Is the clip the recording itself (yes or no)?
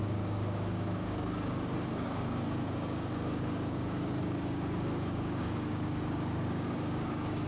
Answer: no